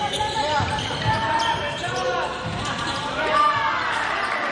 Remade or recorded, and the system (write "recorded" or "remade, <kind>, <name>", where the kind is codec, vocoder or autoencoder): remade, vocoder, BigVGAN v2